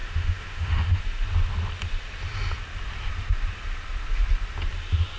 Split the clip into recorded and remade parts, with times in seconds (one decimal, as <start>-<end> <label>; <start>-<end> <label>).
0.0-1.0 remade; 1.0-5.2 recorded